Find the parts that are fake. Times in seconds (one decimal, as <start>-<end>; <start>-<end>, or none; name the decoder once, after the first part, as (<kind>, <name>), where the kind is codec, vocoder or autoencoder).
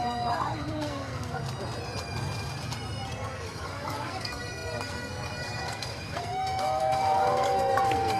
0.0-1.4 (codec, SNAC); 3.1-8.2